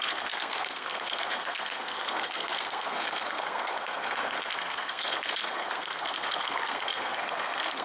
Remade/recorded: remade